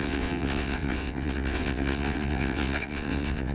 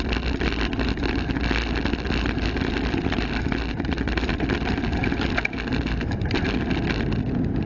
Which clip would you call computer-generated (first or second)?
first